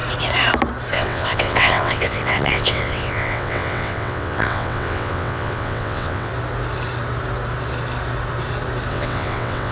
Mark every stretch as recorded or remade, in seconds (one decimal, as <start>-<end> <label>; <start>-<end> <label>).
0.0-0.9 recorded; 0.9-6.3 remade; 6.3-8.9 recorded; 8.9-9.7 remade